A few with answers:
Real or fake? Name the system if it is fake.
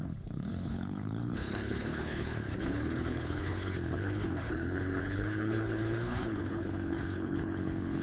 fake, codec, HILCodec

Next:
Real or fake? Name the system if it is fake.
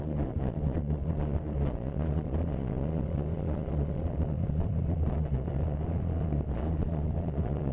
fake, vocoder, Vocos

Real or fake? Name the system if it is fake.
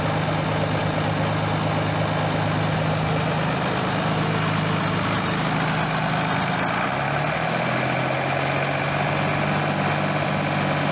real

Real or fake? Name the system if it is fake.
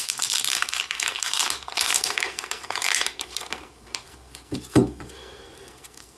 fake, codec, SNAC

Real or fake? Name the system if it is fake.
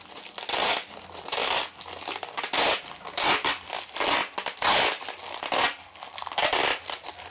real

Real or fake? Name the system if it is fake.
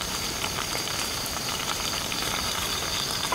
fake, vocoder, BigVGAN v2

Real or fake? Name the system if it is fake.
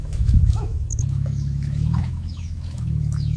fake, autoencoder, DAC-VAE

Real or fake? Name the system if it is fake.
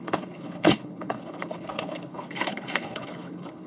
fake, codec, HILCodec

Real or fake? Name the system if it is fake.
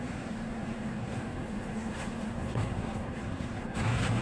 fake, codec, SNAC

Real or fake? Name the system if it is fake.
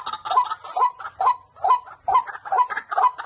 real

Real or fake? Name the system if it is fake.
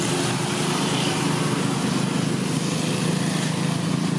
real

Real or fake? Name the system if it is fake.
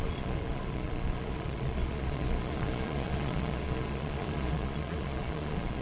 fake, vocoder, Vocos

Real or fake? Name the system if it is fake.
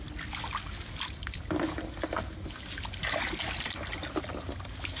real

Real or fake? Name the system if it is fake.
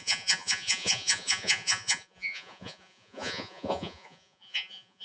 fake, vocoder, Vocos